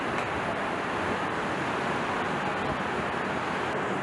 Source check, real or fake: real